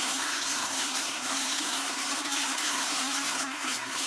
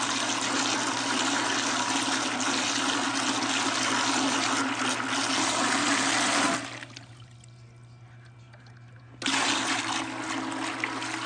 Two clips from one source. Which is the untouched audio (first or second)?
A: second